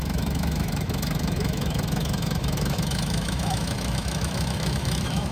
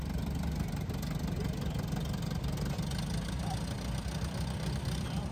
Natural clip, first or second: second